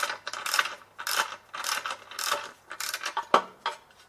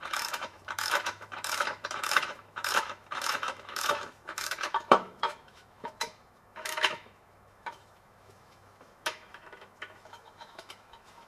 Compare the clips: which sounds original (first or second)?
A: first